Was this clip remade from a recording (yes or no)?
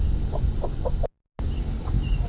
no